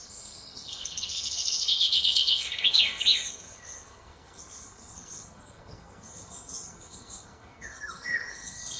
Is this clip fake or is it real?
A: fake